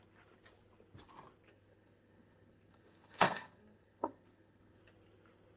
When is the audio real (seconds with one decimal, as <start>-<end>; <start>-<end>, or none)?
0.0-1.5; 4.8-5.6